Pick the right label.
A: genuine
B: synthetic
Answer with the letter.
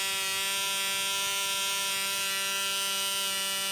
A